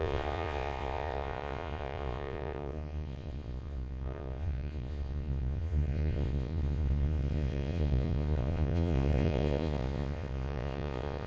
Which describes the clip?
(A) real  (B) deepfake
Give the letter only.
B